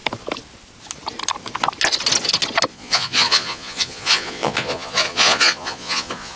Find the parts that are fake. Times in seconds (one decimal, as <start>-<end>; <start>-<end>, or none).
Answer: 2.7-6.4